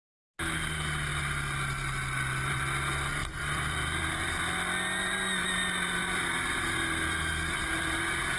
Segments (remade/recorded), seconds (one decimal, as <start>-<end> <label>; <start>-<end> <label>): 0.0-3.2 recorded; 3.2-4.3 remade; 4.3-6.0 recorded; 6.0-8.0 remade; 8.0-8.4 recorded